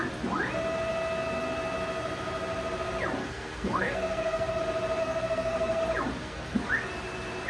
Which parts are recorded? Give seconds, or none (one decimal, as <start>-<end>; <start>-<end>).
0.0-3.2; 4.6-5.0; 5.8-6.2; 6.7-7.5